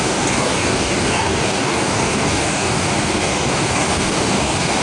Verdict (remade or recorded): remade